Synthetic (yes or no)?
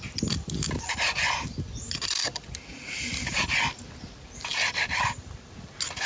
no